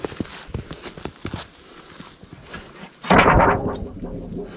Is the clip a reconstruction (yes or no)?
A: no